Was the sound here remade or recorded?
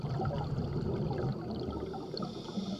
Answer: recorded